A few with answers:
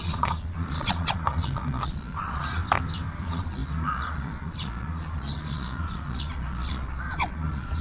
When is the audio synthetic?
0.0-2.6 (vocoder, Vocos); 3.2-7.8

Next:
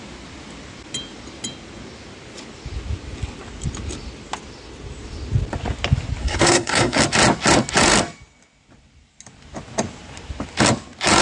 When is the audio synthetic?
6.2-7.0 (codec, SNAC)

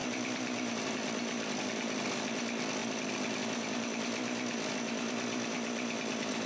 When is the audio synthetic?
none

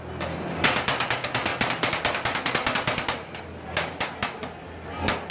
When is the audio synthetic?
none

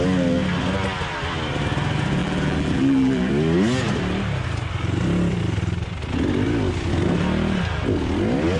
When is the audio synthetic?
2.2-3.3 (vocoder, BigVGAN v2)

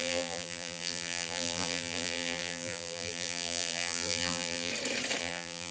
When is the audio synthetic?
0.0-4.7 (vocoder, BigVGAN v2); 5.2-5.7

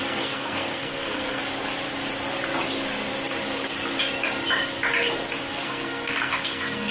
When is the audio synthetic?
0.0-1.4 (codec, SNAC); 5.5-6.9

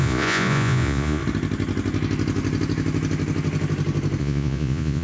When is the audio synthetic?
0.0-1.2 (vocoder, Vocos); 4.2-5.0